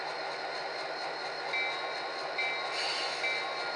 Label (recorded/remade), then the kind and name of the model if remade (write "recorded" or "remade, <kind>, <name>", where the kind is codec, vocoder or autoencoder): recorded